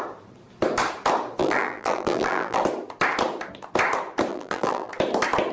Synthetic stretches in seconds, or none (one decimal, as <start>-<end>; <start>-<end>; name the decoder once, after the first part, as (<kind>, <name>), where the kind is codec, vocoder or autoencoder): 1.4-2.6 (vocoder, BigVGAN v2); 4.3-4.9